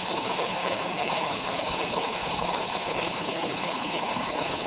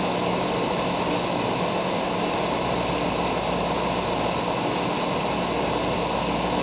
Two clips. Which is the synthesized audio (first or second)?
first